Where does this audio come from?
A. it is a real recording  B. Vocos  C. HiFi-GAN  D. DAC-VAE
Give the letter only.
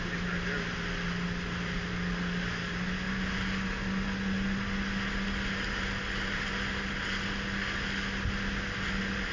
A